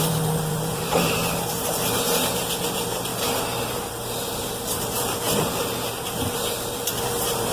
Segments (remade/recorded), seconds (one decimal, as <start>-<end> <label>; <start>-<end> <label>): 0.0-7.5 remade